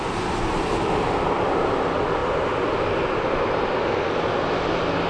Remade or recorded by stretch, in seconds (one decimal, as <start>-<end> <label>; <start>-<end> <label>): 0.0-5.1 recorded